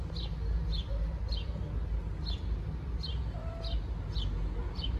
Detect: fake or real real